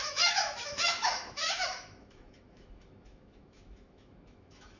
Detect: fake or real fake